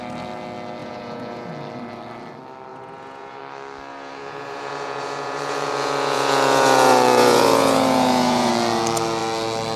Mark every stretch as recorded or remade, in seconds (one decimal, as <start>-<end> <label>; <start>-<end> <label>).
0.0-0.8 recorded; 0.8-1.5 remade; 1.5-2.7 recorded; 2.7-3.4 remade; 3.4-3.9 recorded; 3.9-8.5 remade; 8.5-9.8 recorded